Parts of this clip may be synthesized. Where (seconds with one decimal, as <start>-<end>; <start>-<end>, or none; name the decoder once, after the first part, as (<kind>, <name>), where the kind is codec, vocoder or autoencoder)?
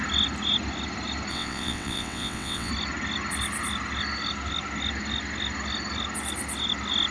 1.3-2.7 (vocoder, WaveNeXt)